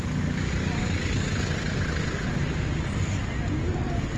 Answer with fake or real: real